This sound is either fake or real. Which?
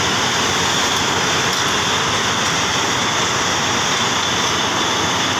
real